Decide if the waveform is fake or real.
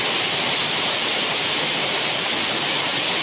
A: real